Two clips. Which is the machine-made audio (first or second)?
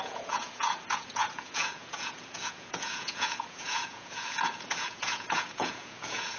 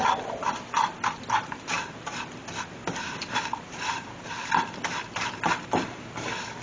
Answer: first